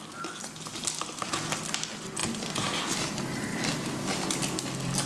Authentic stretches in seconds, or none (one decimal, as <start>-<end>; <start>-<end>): 0.0-2.2; 2.8-3.5